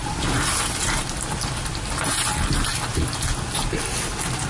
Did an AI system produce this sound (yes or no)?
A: no